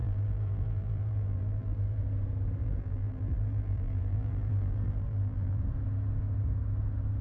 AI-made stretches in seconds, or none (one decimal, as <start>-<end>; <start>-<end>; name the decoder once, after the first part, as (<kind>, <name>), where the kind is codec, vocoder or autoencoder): 0.0-2.0 (vocoder, BigVGAN v2); 2.6-5.6